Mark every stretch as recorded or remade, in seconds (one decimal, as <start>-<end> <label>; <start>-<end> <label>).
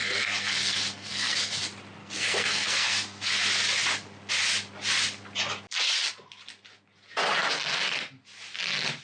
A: 0.0-1.6 remade; 1.6-2.0 recorded; 2.0-3.4 remade; 3.4-9.0 recorded